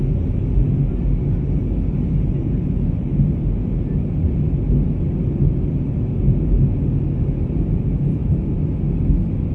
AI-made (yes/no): no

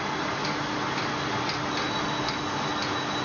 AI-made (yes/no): no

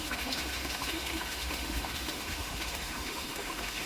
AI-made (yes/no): yes